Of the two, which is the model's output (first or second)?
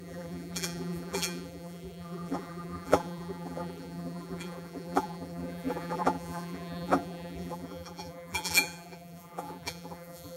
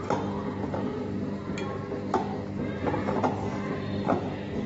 first